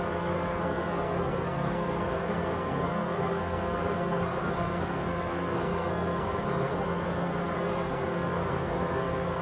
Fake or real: fake